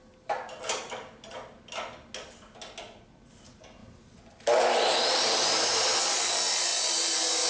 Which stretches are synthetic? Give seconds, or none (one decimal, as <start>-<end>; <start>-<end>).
3.8-5.9; 6.7-7.5